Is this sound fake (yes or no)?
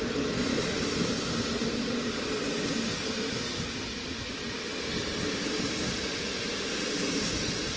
no